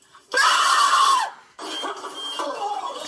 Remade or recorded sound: recorded